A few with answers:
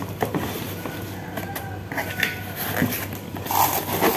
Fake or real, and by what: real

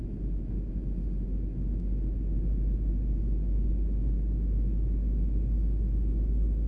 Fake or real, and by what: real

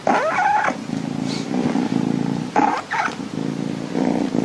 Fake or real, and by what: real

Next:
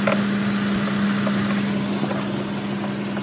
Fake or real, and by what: real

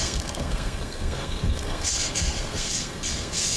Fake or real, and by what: fake, codec, SNAC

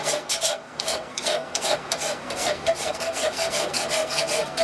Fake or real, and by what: fake, codec, SNAC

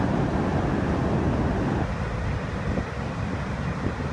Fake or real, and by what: real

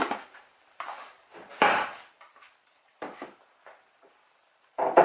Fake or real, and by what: fake, vocoder, BigVGAN v2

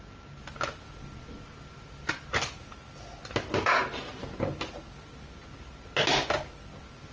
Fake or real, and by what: real